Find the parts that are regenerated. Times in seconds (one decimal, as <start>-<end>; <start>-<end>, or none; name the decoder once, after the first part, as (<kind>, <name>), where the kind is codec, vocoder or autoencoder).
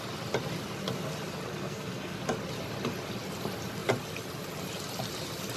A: 1.6-2.2 (codec, SNAC)